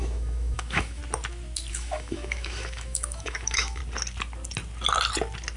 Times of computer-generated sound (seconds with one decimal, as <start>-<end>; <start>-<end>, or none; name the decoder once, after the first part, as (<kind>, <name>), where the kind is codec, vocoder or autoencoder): 0.0-1.0 (autoencoder, DAC-VAE); 1.7-3.8